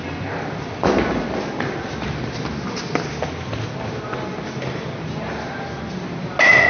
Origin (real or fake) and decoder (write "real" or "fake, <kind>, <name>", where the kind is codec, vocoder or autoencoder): real